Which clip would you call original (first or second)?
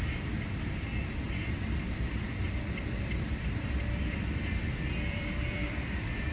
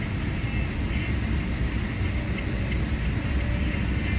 second